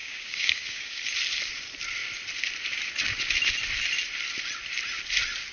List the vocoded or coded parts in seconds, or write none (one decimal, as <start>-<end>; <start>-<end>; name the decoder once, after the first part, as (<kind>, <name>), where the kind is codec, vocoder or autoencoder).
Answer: 0.0-1.0 (codec, DAC)